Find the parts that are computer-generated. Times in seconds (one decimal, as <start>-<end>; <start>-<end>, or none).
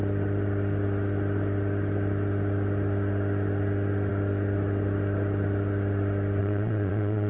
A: 6.4-7.3